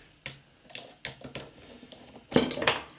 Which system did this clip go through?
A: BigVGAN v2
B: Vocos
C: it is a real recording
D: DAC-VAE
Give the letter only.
C